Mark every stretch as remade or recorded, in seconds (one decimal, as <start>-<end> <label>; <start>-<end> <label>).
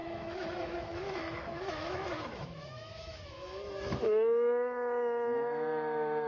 0.0-6.3 remade